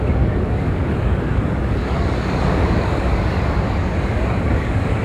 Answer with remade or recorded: remade